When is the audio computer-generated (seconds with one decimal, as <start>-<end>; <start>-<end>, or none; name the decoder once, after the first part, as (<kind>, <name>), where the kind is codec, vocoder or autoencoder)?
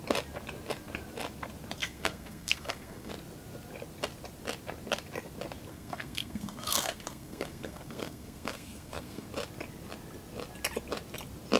1.8-3.1 (codec, SNAC); 5.7-9.3